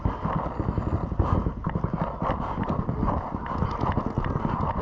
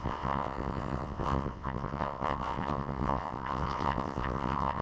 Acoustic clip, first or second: first